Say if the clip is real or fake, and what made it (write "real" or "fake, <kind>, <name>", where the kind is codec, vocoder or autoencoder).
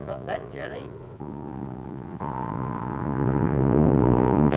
fake, vocoder, Vocos